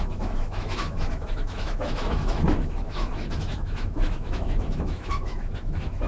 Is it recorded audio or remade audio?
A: remade